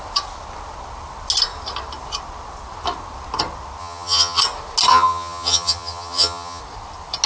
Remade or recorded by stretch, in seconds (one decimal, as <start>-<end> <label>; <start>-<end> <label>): 0.0-3.8 recorded; 3.8-4.4 remade; 4.4-4.9 recorded; 4.9-6.6 remade; 6.6-7.3 recorded

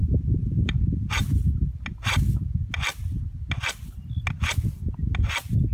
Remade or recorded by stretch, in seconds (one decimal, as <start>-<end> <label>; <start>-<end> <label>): 0.0-1.1 remade; 1.1-5.7 recorded

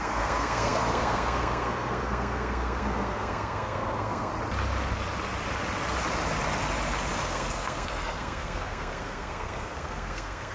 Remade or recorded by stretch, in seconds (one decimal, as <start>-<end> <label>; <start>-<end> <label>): 0.0-4.3 remade; 4.3-7.2 recorded; 7.2-10.5 remade

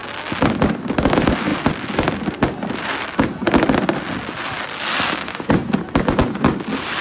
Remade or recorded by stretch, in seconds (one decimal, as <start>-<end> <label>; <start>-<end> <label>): 0.0-7.0 recorded

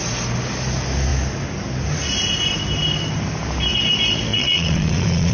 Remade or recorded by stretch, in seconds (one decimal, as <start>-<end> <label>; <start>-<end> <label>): 0.0-4.3 recorded; 4.3-5.3 remade

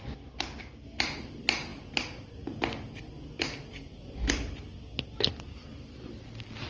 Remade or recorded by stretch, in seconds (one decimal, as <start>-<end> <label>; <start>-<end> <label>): 0.0-6.7 recorded

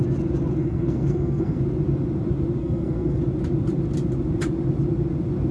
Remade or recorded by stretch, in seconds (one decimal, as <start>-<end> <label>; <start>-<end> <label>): 0.0-0.6 recorded; 0.6-1.6 remade; 1.6-2.6 recorded; 2.6-3.2 remade; 3.2-5.5 recorded

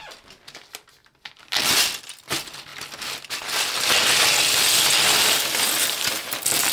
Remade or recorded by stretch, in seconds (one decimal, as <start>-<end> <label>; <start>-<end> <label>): 0.0-5.8 recorded; 5.8-6.7 remade